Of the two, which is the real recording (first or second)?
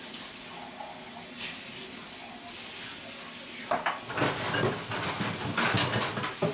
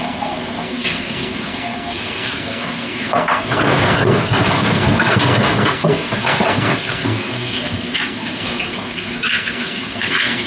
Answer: first